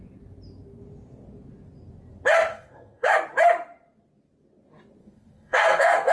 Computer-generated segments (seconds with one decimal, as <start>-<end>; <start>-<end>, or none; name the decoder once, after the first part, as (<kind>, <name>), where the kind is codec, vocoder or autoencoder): 2.5-3.1 (codec, SNAC); 5.0-6.1